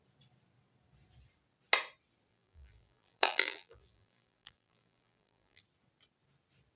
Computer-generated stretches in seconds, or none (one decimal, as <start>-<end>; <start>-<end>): 2.3-5.6